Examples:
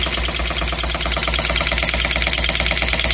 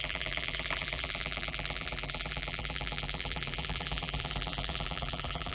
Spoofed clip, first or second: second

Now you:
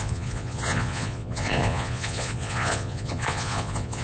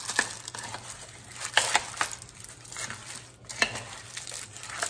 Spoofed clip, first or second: first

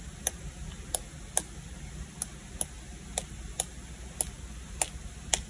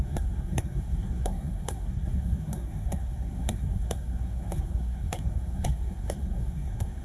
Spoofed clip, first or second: second